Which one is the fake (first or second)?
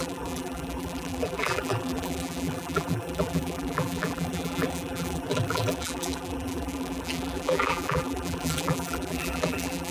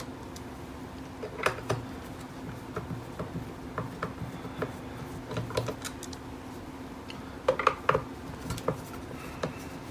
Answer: first